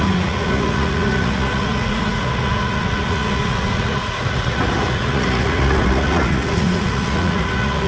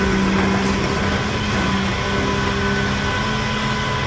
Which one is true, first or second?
second